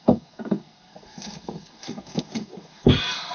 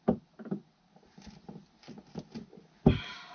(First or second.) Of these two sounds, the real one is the second